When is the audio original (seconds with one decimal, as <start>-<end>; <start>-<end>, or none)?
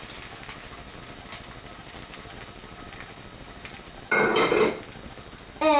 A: 0.0-5.8